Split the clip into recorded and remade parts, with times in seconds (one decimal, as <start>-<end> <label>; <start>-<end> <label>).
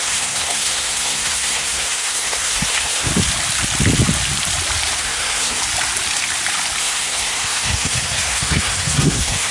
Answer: 0.0-3.1 remade; 3.1-5.0 recorded; 5.0-5.6 remade; 5.6-6.8 recorded; 6.8-9.5 remade